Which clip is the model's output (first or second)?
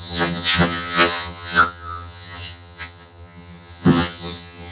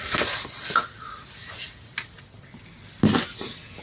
first